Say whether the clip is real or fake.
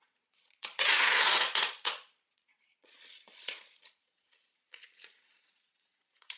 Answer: fake